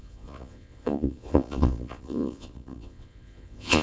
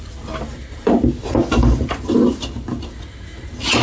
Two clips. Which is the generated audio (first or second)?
first